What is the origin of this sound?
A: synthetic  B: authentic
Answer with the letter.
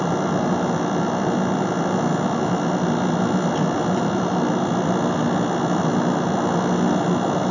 B